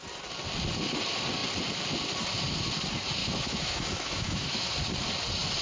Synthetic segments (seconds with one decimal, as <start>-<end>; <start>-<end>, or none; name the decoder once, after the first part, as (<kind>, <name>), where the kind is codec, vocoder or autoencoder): 3.2-4.7 (autoencoder, DAC-VAE)